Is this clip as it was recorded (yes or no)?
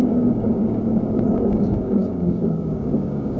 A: no